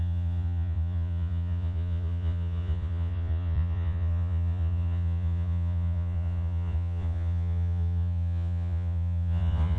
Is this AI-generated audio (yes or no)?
yes